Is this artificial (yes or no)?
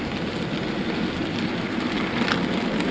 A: no